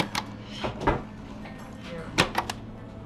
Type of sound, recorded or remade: recorded